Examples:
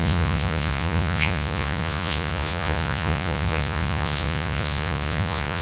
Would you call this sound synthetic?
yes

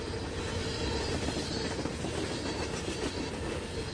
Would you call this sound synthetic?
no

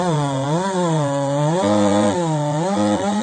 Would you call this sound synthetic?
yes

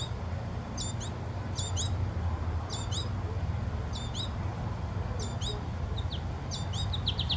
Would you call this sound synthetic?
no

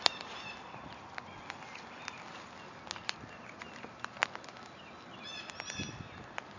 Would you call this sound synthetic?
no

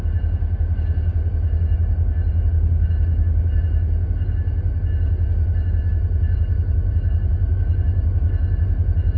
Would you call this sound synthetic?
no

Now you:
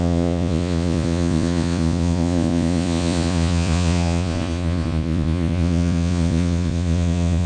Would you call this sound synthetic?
yes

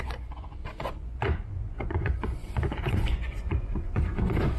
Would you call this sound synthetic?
yes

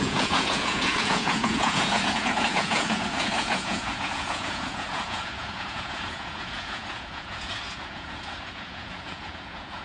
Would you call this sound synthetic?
yes